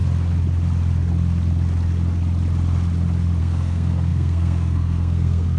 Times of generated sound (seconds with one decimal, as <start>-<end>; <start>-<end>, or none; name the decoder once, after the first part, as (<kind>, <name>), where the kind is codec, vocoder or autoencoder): 3.4-5.6 (codec, SNAC)